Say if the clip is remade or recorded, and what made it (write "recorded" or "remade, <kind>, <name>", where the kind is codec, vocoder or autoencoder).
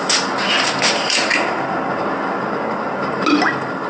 recorded